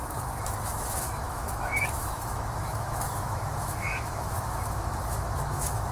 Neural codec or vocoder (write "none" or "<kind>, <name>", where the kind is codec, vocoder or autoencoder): autoencoder, DAC-VAE